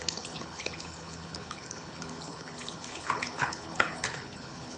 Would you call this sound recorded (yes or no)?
no